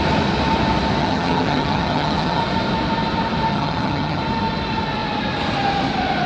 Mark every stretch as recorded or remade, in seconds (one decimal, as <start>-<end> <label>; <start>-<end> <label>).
0.0-1.0 recorded; 1.0-2.4 remade; 2.4-3.5 recorded; 3.5-4.2 remade; 4.2-6.3 recorded